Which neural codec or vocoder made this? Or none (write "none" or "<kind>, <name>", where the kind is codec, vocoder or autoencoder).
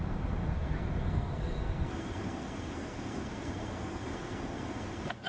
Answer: codec, SNAC